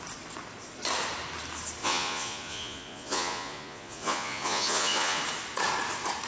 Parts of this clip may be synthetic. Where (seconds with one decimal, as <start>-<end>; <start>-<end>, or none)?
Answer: 1.8-5.2